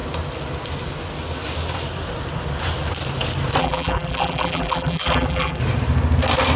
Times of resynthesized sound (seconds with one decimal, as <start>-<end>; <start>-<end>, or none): 3.6-5.6